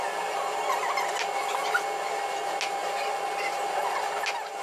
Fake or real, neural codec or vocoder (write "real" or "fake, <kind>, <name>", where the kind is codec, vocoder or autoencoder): real